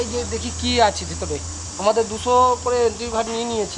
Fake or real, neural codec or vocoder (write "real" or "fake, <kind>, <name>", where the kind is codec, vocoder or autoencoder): real